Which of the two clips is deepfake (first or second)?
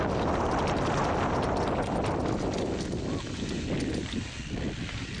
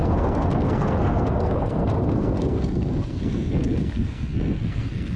second